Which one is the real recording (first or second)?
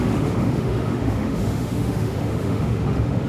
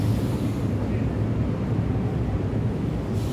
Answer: second